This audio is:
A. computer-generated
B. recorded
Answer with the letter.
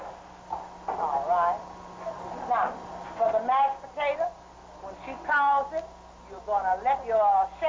B